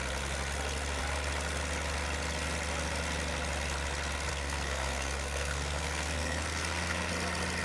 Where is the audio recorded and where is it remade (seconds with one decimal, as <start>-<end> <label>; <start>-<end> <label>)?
0.0-4.3 recorded; 4.3-7.1 remade; 7.1-7.6 recorded